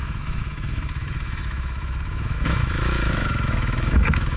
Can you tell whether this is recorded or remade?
remade